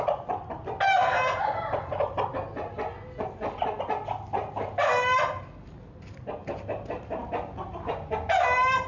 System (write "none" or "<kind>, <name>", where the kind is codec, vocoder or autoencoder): none